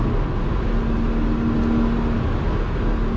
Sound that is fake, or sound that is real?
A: real